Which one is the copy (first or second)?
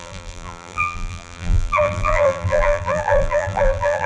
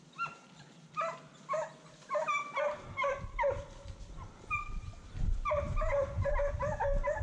first